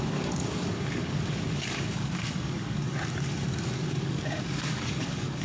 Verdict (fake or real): fake